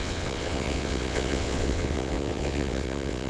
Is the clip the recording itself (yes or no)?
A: no